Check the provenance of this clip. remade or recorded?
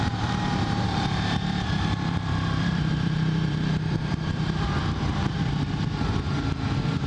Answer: remade